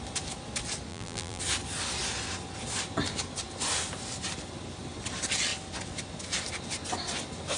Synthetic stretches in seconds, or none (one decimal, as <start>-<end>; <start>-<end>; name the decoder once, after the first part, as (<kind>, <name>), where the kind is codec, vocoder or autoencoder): 0.9-1.4 (vocoder, BigVGAN v2)